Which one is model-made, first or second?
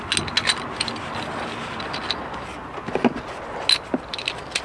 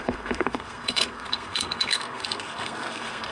second